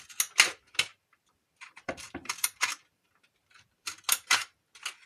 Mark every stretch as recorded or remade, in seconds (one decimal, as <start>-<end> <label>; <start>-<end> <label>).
0.0-0.9 recorded; 0.9-4.0 remade; 4.0-5.1 recorded